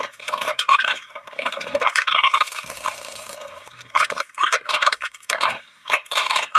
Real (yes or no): no